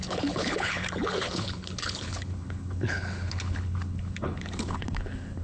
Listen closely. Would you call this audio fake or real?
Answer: fake